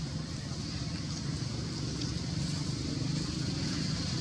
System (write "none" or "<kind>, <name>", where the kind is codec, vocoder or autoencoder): none